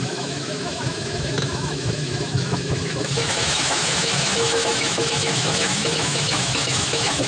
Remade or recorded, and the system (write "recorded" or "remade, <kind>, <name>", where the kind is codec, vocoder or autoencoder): remade, autoencoder, DAC-VAE